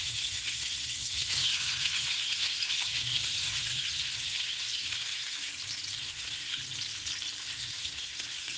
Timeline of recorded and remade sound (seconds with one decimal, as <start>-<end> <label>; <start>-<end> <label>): 0.0-5.5 remade; 5.5-6.0 recorded; 6.0-6.6 remade; 6.6-7.4 recorded; 7.4-8.6 remade